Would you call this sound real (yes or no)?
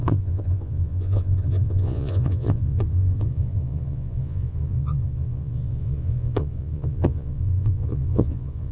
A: no